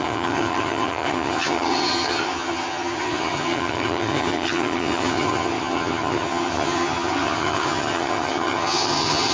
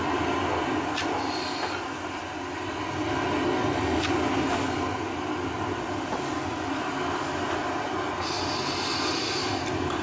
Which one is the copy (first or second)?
first